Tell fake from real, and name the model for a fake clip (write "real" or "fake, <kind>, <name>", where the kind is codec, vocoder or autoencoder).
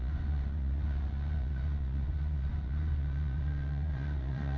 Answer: fake, vocoder, Vocos